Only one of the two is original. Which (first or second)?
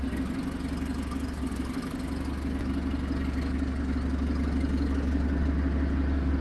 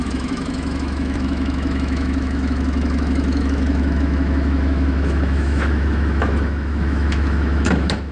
first